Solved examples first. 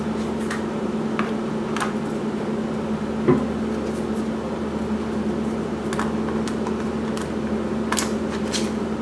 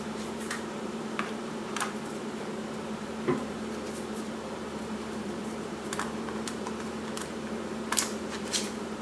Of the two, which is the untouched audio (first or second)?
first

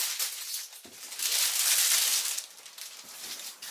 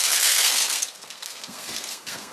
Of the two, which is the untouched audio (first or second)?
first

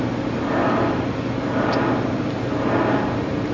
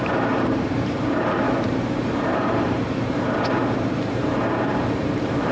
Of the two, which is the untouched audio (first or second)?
first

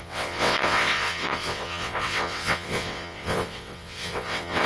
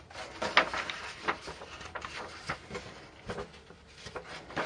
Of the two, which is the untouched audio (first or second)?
second